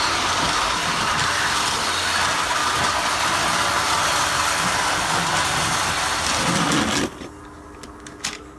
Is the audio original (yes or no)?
yes